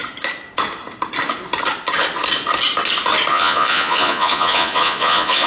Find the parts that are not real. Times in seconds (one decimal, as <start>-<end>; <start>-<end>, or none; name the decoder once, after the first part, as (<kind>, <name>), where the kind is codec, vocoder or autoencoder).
3.3-5.5 (vocoder, Vocos)